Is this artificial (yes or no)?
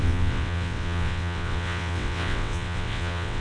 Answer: yes